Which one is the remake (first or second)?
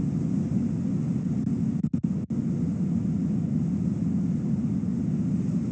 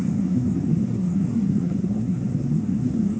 second